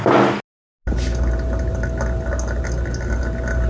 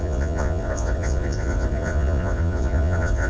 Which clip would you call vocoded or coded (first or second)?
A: second